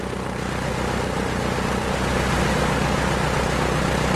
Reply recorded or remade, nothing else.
recorded